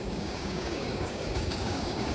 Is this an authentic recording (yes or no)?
no